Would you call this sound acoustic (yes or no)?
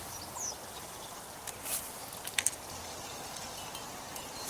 yes